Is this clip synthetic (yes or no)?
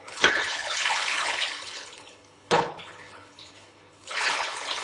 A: yes